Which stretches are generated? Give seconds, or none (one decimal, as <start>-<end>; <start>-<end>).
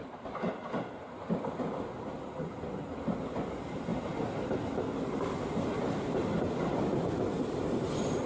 none